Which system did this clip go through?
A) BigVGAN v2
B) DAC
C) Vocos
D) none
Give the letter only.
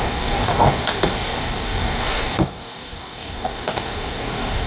B